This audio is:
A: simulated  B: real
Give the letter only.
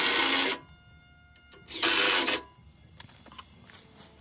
B